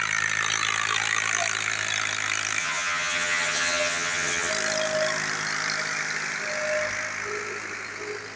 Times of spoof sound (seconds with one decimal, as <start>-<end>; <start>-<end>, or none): 2.6-4.5